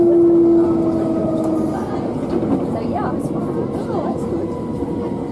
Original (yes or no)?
yes